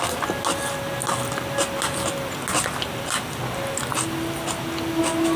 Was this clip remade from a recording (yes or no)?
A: no